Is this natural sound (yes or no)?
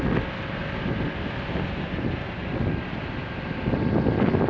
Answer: yes